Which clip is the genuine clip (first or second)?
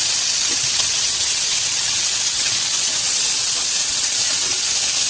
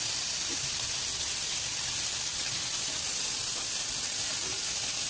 second